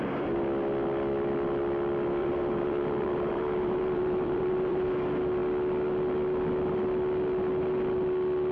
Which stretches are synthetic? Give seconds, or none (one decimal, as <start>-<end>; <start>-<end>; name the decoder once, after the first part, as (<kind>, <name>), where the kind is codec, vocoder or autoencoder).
2.2-4.9 (vocoder, BigVGAN v2)